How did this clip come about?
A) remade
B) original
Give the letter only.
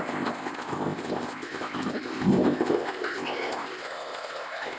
A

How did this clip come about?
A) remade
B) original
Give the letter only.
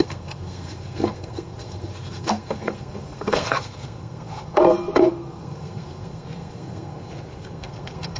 A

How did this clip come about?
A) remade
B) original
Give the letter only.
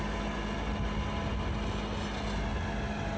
B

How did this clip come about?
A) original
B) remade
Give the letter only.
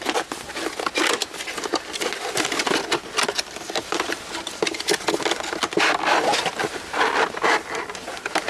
A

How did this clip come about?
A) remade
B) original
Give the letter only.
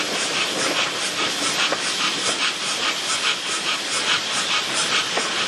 B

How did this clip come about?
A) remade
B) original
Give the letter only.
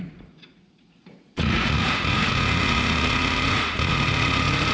A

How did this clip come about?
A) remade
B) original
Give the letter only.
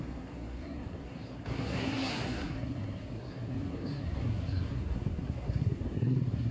A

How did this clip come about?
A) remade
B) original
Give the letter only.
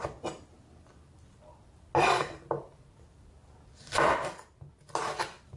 B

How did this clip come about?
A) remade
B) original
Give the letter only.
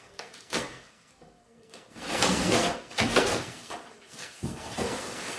A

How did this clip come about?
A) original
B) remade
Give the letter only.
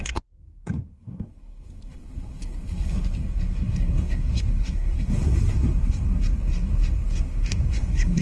B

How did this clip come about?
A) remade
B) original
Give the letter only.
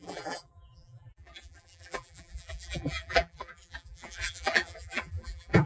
A